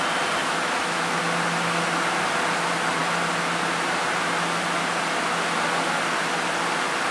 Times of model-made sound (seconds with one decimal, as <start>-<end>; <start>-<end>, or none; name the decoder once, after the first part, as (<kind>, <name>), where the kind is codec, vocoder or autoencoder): 0.4-1.2 (autoencoder, DAC-VAE)